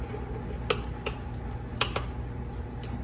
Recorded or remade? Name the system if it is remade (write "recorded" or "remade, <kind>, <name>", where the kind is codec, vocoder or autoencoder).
recorded